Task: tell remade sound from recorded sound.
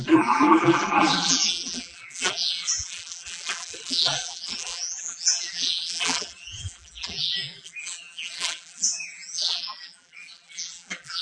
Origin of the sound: remade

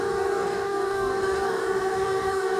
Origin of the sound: remade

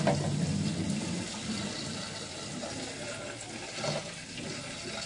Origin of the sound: recorded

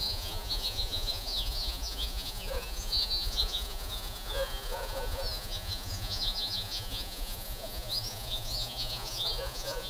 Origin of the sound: remade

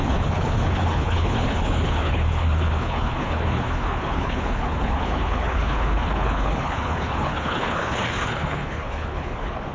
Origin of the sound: remade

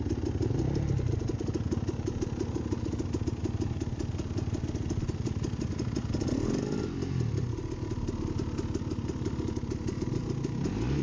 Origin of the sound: recorded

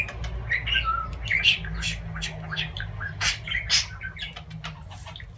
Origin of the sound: recorded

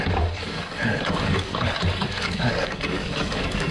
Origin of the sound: remade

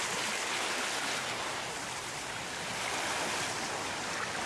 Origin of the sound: recorded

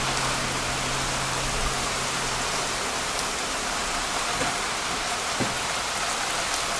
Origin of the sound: recorded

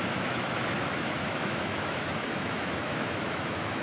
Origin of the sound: remade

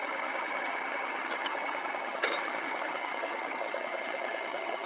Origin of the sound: remade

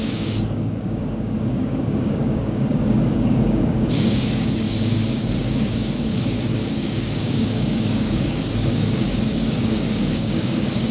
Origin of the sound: remade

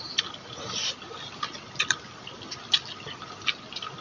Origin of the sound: recorded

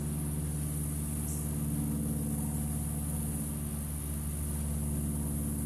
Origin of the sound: recorded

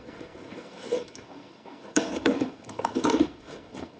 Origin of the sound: remade